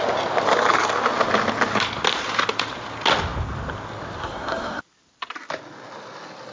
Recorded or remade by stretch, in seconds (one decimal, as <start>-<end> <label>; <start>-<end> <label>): 0.0-4.2 recorded; 4.2-4.8 remade; 4.8-6.5 recorded